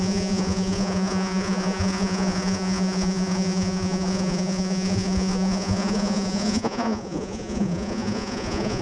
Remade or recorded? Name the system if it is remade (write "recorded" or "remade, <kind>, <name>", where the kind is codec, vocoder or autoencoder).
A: remade, vocoder, Vocos